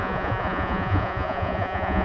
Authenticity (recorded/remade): remade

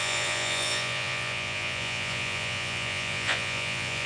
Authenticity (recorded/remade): remade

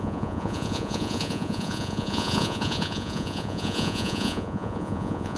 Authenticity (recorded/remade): remade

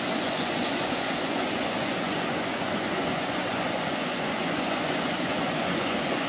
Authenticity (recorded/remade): remade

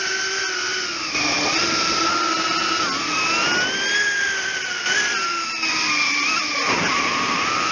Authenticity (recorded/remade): recorded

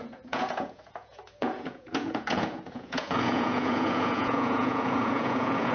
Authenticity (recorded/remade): remade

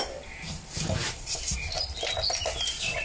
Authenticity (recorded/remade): recorded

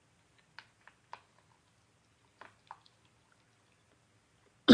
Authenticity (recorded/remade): recorded